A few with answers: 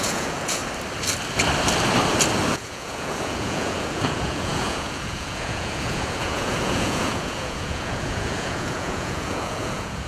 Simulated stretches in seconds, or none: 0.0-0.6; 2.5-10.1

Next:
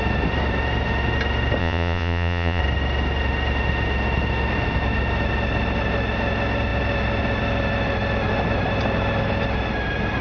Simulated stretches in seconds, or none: 1.6-2.6

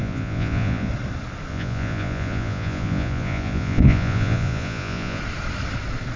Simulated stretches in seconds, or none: 0.0-0.9; 1.5-5.2

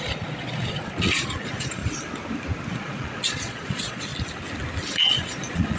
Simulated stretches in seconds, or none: 0.0-1.8; 2.7-4.1; 4.9-5.8

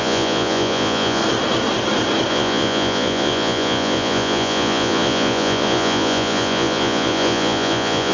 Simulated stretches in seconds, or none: 0.0-1.2; 2.3-8.1

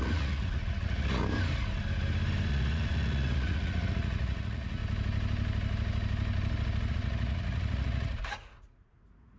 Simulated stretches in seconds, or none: 0.0-1.2; 2.5-4.8; 6.9-9.4

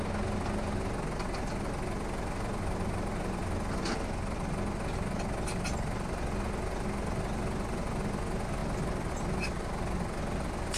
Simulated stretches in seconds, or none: none

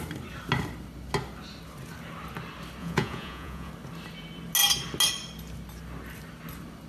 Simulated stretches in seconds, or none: 2.8-3.7